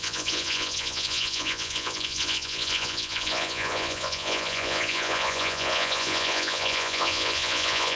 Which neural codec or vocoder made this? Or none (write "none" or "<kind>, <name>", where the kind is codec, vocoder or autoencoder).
vocoder, Vocos